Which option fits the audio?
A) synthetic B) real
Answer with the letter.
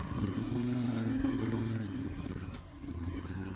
A